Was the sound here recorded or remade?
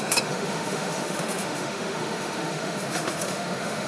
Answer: remade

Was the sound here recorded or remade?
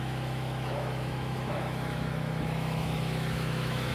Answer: remade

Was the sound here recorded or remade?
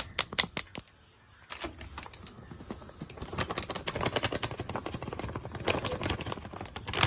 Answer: recorded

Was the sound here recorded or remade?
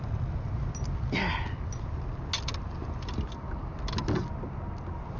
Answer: recorded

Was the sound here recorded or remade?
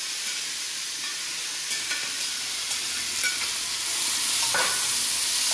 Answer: recorded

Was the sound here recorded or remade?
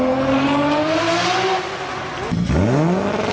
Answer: recorded